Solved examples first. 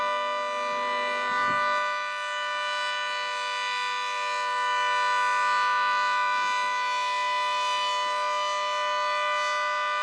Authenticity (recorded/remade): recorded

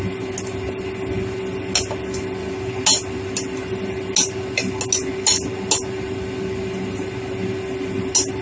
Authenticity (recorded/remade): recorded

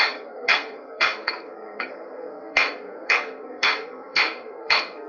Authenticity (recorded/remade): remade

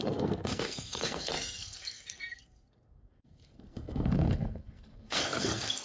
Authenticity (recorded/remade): remade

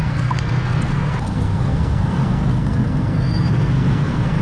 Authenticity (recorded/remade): remade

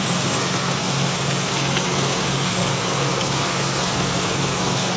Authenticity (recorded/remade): remade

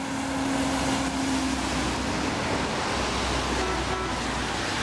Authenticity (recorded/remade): recorded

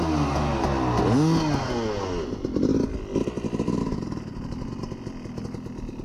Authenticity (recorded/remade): recorded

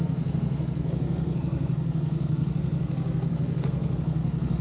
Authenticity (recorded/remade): remade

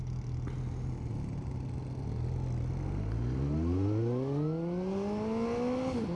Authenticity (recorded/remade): recorded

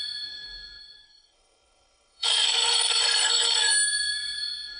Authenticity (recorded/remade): remade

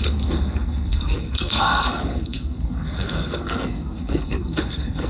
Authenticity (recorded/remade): remade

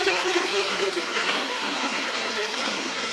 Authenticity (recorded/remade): remade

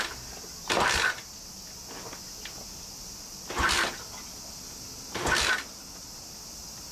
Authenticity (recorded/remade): recorded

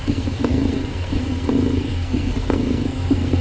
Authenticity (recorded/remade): remade